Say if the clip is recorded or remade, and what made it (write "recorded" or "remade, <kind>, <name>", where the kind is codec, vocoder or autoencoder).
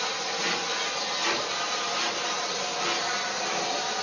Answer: recorded